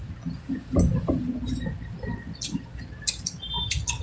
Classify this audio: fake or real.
real